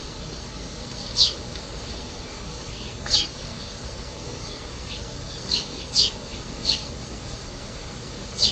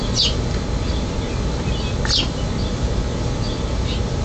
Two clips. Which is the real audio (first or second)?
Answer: second